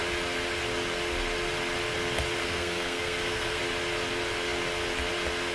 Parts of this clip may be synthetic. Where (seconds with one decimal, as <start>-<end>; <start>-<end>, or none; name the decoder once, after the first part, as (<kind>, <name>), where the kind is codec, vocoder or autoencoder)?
2.4-3.6 (codec, SNAC)